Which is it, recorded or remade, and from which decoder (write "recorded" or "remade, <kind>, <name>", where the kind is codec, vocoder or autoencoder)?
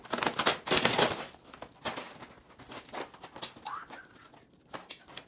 recorded